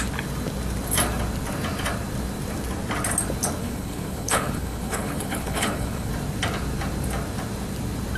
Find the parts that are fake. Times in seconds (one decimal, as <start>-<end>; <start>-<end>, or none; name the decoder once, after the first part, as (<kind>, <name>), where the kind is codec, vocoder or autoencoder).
3.6-6.1 (codec, HILCodec)